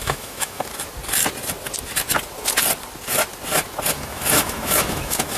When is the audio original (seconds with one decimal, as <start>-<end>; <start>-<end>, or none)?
0.7-3.9